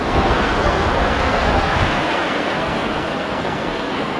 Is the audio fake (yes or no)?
yes